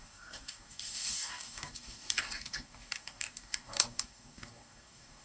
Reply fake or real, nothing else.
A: fake